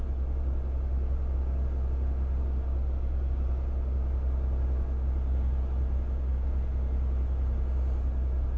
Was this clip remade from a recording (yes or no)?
no